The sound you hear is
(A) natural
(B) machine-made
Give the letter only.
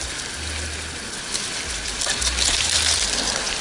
B